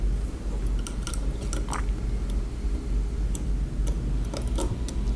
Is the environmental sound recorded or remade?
recorded